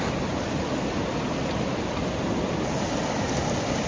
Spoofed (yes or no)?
no